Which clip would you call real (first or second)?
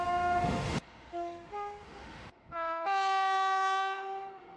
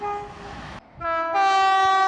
second